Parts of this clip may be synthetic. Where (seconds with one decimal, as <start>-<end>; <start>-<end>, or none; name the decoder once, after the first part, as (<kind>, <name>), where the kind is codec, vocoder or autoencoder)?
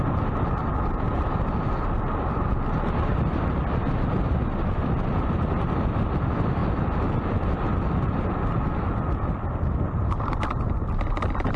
none